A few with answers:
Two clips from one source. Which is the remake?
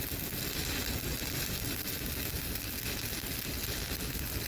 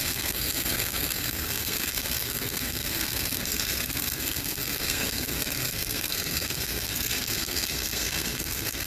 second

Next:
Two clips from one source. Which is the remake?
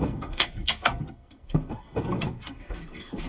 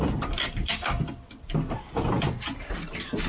first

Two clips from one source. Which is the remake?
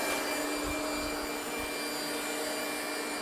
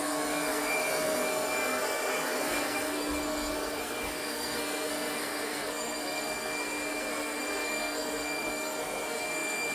second